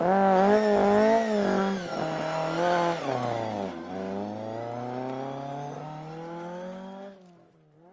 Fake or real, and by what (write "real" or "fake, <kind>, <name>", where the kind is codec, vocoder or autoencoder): real